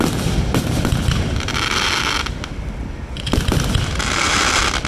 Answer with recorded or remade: recorded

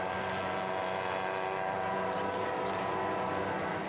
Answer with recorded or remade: recorded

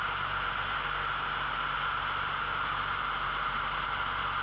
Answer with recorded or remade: recorded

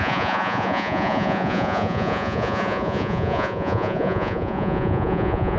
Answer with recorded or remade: remade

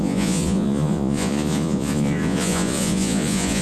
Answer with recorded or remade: remade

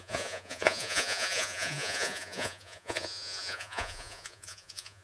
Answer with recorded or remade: remade